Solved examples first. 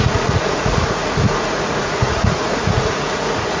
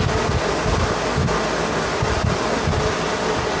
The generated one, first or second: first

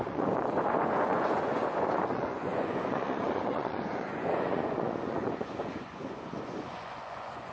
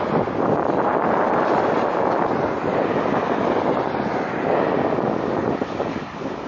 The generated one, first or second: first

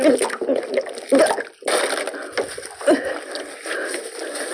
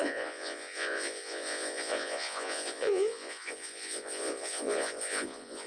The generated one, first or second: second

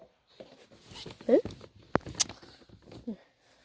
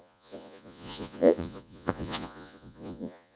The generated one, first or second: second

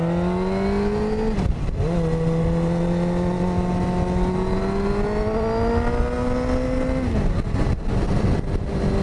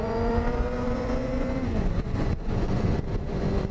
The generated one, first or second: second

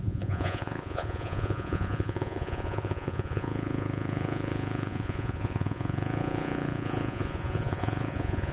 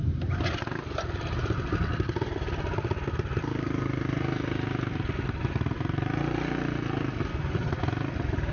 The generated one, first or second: first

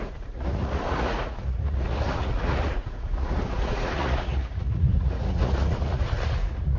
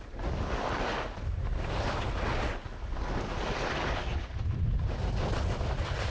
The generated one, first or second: first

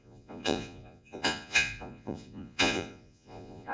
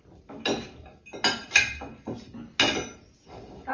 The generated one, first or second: first